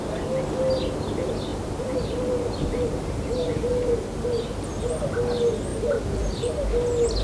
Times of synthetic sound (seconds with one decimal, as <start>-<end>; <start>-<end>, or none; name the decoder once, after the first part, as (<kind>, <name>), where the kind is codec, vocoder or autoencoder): 1.5-3.9 (vocoder, BigVGAN v2); 5.7-6.5